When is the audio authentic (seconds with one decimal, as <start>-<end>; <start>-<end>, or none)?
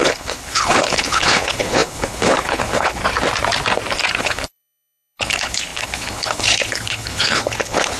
3.0-4.2